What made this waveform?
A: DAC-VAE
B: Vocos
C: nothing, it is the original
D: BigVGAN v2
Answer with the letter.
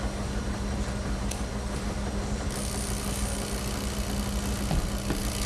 C